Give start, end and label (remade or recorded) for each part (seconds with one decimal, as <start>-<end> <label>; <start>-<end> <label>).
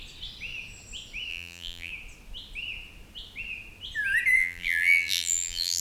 0.0-1.3 recorded; 1.3-1.9 remade; 1.9-4.4 recorded; 4.4-5.8 remade